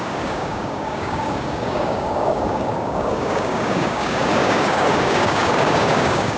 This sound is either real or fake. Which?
fake